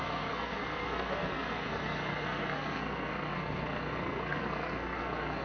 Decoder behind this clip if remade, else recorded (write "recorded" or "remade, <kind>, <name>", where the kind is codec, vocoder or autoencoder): remade, codec, SNAC